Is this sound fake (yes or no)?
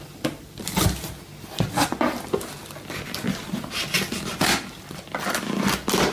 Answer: no